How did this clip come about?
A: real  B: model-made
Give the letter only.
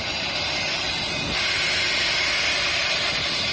A